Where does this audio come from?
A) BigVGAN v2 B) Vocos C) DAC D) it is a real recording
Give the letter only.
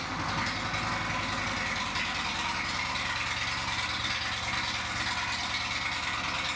D